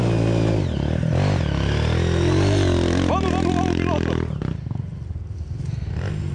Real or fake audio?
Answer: real